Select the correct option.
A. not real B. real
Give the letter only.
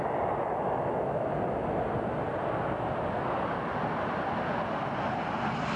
B